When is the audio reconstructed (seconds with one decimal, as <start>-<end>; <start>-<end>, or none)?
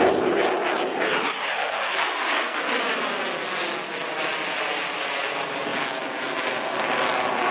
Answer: 1.6-2.8